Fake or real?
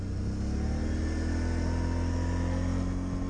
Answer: real